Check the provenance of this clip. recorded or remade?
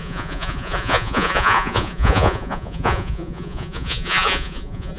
remade